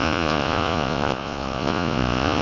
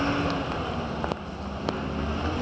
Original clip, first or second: second